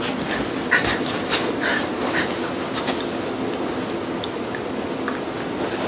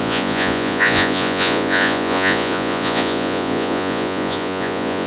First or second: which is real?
first